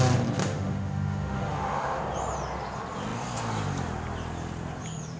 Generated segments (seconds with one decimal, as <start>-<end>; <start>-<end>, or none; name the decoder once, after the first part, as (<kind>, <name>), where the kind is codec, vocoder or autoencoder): 0.4-2.0 (autoencoder, DAC-VAE)